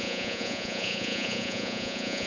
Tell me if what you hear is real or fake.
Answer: fake